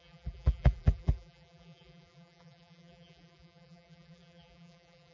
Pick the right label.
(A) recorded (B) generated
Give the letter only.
B